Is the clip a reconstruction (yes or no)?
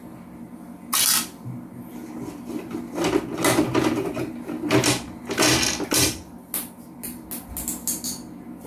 no